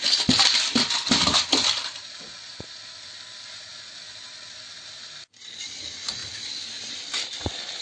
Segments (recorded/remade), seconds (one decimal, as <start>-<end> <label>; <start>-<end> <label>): 0.0-3.7 remade; 3.7-5.6 recorded; 5.6-6.2 remade; 6.2-6.9 recorded; 6.9-7.8 remade